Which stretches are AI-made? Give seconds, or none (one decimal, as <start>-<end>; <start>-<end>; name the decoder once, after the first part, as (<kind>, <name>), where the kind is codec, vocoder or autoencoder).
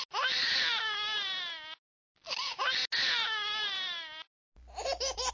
none